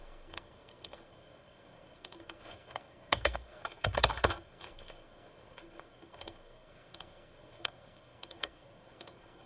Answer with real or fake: fake